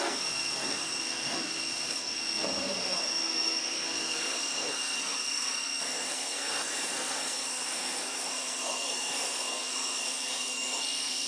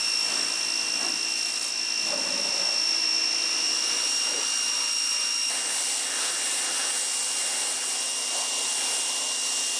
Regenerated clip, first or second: first